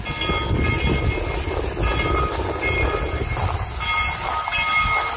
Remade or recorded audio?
recorded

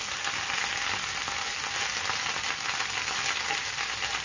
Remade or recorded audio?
recorded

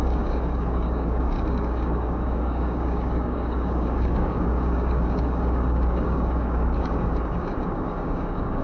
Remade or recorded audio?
remade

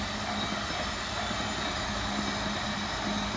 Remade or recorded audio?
recorded